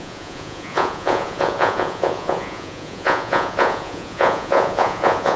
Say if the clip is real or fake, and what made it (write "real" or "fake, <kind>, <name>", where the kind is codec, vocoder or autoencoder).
fake, vocoder, Vocos